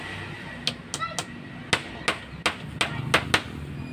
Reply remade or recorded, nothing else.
recorded